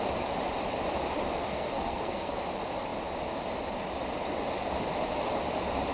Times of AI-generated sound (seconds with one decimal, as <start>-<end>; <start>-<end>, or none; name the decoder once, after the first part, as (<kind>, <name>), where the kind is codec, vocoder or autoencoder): 1.4-2.4 (codec, SNAC)